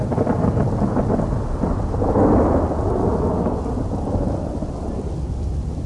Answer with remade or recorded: recorded